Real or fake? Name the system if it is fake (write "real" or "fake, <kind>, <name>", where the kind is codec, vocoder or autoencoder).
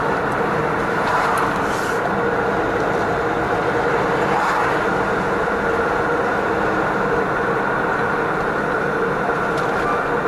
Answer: real